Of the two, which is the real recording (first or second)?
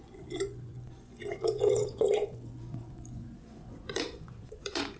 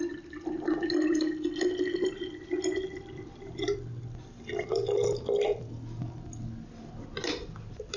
second